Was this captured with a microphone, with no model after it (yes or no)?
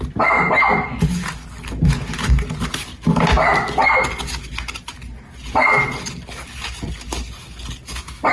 yes